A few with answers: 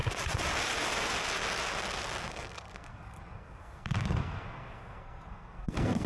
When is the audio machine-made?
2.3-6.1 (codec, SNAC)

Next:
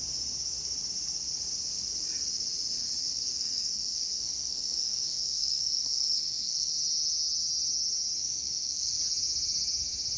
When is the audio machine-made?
3.0-6.7 (codec, SNAC); 8.2-9.0

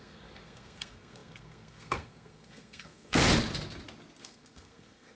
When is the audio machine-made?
0.0-3.2 (codec, SNAC); 4.2-5.2

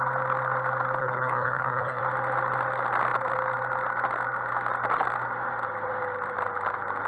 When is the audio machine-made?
1.0-2.0 (codec, SNAC)

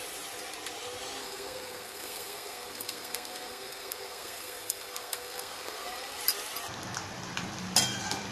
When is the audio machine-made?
1.2-6.2 (codec, SNAC)

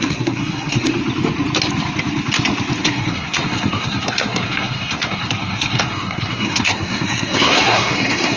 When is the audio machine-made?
0.0-1.0 (codec, SNAC); 2.8-8.4

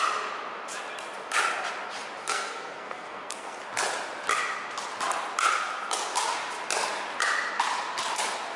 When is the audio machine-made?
2.2-3.6 (codec, SNAC)

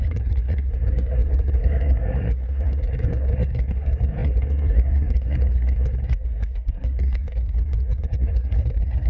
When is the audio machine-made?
0.0-9.1 (codec, SNAC)